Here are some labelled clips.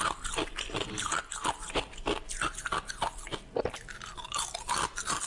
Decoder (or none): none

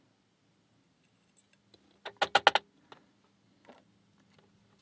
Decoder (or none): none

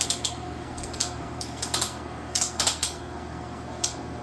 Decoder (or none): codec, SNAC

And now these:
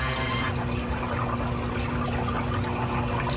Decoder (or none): none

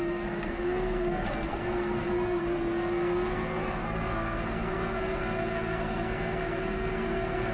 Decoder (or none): codec, SNAC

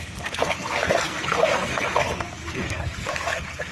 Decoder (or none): codec, SNAC